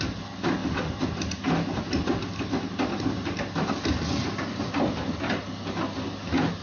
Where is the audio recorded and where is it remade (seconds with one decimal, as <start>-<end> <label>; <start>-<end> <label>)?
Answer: 0.0-6.6 recorded